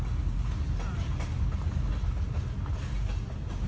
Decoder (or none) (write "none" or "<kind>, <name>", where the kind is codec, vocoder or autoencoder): none